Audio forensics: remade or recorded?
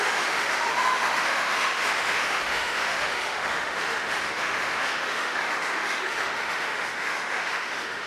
remade